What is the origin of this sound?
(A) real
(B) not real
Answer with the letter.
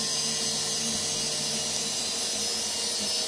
A